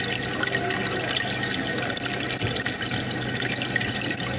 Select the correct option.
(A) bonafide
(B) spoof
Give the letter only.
A